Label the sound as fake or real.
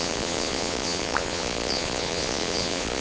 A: fake